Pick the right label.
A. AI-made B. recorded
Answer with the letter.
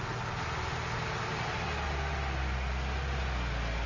B